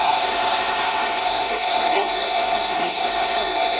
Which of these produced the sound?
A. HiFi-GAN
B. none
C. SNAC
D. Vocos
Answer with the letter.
C